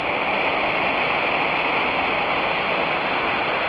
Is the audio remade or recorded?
recorded